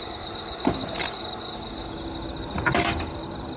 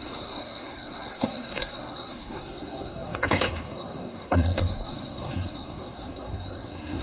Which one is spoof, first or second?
second